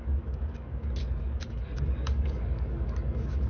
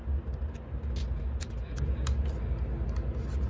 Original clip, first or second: second